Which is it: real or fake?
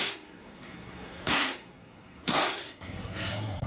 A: fake